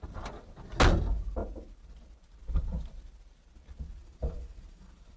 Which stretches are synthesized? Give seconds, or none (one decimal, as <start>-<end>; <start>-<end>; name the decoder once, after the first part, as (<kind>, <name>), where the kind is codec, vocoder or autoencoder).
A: 4.0-5.2 (vocoder, BigVGAN v2)